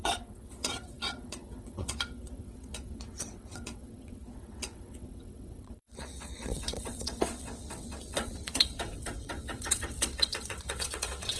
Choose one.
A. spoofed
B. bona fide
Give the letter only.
A